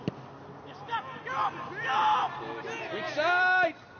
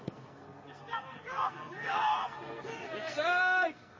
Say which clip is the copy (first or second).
second